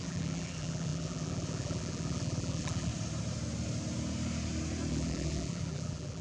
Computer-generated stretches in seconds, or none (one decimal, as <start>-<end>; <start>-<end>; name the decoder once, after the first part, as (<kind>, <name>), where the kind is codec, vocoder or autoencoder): 0.0-2.9 (vocoder, BigVGAN v2); 4.9-6.2